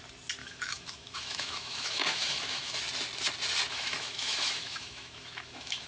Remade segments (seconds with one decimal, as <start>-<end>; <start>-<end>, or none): 0.4-2.8; 3.7-5.9